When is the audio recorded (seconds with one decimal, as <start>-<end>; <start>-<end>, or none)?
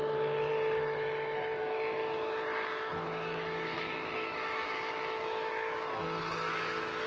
none